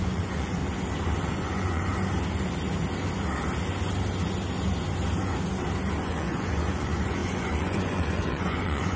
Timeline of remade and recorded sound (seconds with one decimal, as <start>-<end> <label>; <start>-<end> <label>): 0.0-0.6 remade; 0.6-1.3 recorded; 1.3-1.9 remade; 1.9-6.0 recorded; 6.0-9.0 remade